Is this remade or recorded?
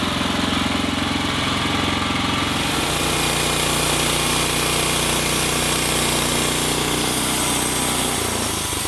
recorded